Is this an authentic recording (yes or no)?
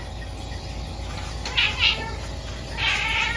yes